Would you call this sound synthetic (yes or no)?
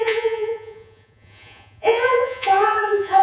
yes